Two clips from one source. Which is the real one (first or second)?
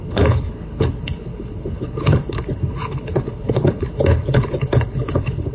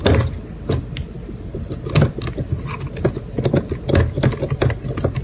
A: second